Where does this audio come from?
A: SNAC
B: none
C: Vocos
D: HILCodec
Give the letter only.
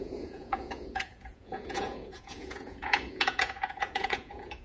C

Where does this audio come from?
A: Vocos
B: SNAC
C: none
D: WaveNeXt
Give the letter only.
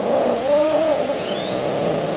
A